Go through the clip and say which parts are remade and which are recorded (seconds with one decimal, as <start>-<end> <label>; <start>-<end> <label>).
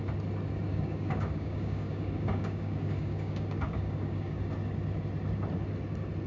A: 0.0-0.7 recorded; 0.7-4.4 remade; 4.4-6.3 recorded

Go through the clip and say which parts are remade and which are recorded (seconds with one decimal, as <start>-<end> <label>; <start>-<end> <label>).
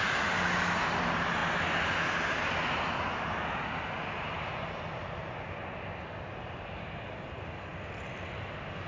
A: 0.0-8.9 recorded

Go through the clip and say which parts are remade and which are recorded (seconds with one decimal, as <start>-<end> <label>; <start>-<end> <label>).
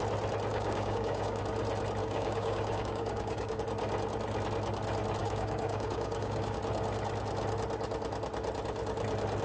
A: 0.0-0.5 recorded; 0.5-1.4 remade; 1.4-2.0 recorded; 2.0-3.6 remade; 3.6-5.2 recorded; 5.2-6.6 remade; 6.6-9.4 recorded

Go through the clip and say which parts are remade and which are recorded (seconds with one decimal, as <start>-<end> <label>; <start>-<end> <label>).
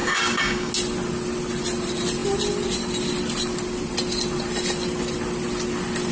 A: 0.0-0.7 remade; 0.7-6.1 recorded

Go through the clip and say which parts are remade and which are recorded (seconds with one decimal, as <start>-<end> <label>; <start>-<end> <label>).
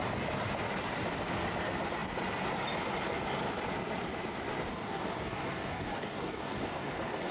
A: 0.0-4.7 recorded; 4.7-7.3 remade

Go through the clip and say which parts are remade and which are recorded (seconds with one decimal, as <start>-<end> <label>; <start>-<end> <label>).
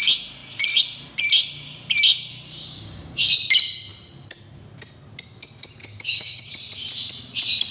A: 0.0-2.3 recorded; 2.3-3.2 remade; 3.2-5.8 recorded; 5.8-6.5 remade; 6.5-7.7 recorded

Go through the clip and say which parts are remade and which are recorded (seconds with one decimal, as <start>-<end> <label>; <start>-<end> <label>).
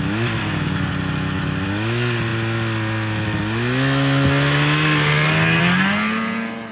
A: 0.0-0.4 recorded; 0.4-0.9 remade; 0.9-6.7 recorded